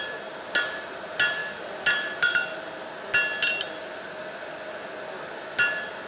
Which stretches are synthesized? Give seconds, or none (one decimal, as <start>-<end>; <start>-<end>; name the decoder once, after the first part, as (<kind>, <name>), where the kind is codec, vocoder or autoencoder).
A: none